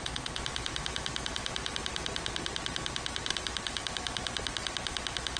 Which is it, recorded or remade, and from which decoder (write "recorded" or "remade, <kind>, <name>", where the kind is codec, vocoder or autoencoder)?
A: recorded